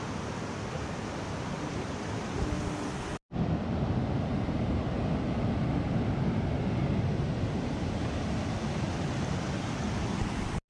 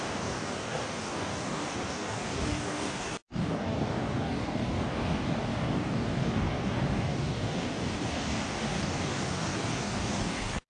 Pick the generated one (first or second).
second